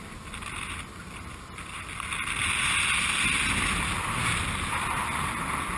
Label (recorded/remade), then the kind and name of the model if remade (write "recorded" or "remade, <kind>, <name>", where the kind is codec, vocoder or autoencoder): recorded